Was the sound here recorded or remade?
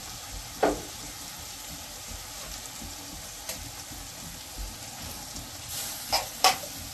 recorded